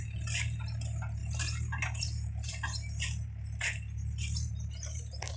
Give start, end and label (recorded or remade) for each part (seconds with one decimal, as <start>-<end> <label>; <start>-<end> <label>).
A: 0.0-5.4 recorded